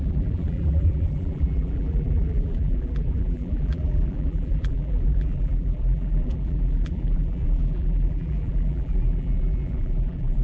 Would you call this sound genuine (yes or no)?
no